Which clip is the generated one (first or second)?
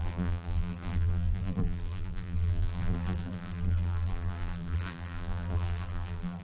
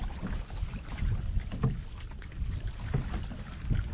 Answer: first